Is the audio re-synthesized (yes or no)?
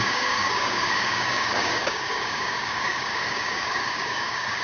yes